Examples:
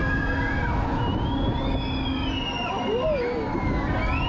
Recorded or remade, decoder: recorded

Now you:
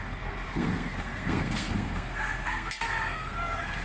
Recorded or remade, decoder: remade, codec, SNAC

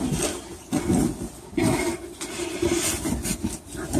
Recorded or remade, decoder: recorded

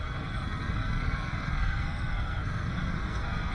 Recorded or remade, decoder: remade, codec, SNAC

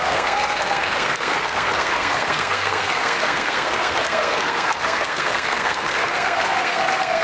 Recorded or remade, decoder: remade, codec, SNAC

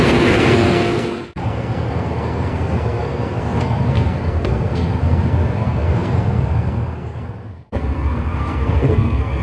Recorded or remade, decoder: remade, codec, SNAC